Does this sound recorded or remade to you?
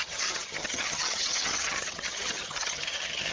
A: remade